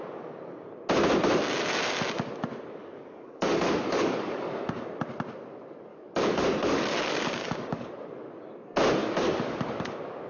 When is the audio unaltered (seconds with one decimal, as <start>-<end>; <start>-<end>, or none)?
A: 0.0-2.8; 4.9-5.9; 7.9-9.0; 9.9-10.3

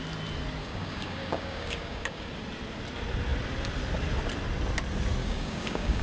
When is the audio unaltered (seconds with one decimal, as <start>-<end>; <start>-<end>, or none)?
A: 0.0-0.6; 2.3-5.2

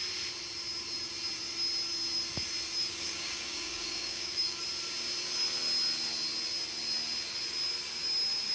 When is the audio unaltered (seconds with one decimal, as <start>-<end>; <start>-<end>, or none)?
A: 0.0-2.8; 4.6-8.5

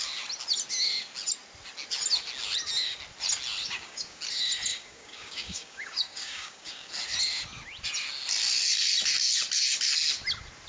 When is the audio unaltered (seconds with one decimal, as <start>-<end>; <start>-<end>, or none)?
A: 0.0-3.6; 4.2-4.7; 6.9-10.7